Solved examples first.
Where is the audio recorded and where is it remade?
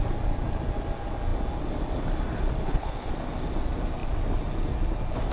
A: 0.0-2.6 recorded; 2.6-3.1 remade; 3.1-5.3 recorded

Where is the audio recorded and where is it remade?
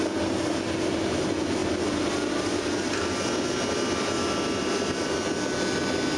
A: 0.0-6.2 recorded